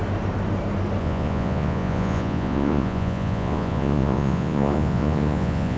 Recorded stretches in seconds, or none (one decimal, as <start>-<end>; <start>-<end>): 0.0-1.0